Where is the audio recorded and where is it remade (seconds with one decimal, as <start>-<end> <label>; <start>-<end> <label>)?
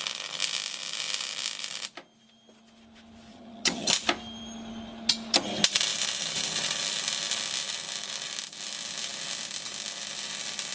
0.0-3.3 recorded; 3.3-3.9 remade; 3.9-10.7 recorded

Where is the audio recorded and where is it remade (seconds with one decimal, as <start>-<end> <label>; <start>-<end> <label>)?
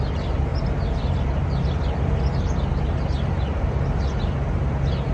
0.0-5.1 recorded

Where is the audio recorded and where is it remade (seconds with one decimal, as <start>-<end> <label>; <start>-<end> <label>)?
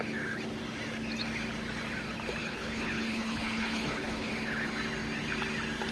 0.0-2.4 recorded; 2.4-4.3 remade; 4.3-5.9 recorded